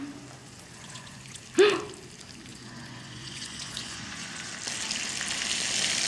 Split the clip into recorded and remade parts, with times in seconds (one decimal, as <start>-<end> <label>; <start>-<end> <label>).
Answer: 0.0-0.4 recorded; 0.4-1.4 remade; 1.4-2.5 recorded; 2.5-4.5 remade; 4.5-6.1 recorded